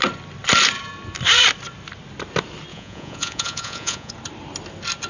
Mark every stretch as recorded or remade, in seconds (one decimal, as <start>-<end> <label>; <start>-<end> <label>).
0.0-2.7 recorded; 2.7-4.1 remade; 4.1-5.1 recorded